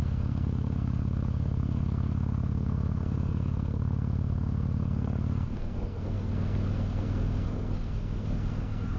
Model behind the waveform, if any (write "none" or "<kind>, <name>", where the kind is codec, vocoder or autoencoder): codec, SNAC